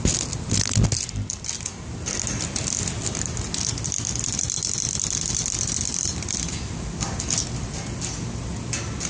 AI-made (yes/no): no